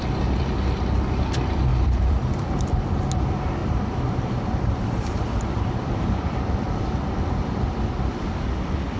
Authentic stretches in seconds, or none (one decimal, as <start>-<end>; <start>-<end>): 0.0-1.7; 2.8-3.6; 7.8-9.0